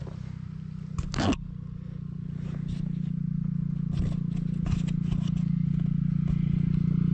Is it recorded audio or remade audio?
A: recorded